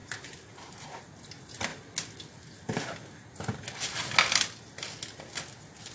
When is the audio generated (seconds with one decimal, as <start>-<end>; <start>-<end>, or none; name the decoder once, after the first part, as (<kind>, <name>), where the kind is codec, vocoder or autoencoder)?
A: 0.0-1.0 (vocoder, BigVGAN v2)